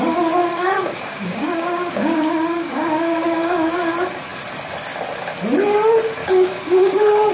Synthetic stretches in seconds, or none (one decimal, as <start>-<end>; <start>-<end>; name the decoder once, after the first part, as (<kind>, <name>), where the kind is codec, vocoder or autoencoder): 0.4-3.7 (codec, DAC); 6.2-7.3

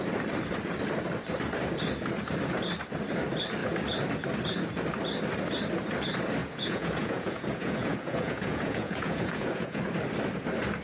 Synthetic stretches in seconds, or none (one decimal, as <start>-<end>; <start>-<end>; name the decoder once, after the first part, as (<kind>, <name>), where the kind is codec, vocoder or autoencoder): 6.4-9.8 (vocoder, Vocos)

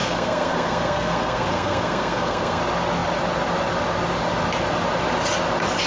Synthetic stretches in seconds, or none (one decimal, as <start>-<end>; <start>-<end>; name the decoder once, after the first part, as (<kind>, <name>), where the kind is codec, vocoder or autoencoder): 0.0-2.6 (codec, SNAC)

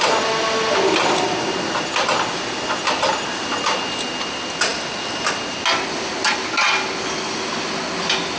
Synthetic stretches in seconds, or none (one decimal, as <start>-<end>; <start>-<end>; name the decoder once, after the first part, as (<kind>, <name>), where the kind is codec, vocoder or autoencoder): none

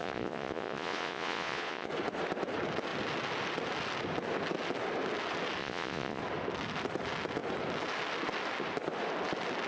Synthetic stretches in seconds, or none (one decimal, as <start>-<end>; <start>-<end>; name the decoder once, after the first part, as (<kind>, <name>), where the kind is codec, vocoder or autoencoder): 0.0-1.9 (vocoder, Vocos); 5.6-6.2

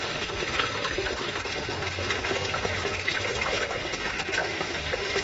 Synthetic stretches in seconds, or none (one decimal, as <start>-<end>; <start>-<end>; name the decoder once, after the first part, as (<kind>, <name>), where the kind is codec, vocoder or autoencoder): 0.0-5.2 (autoencoder, DAC-VAE)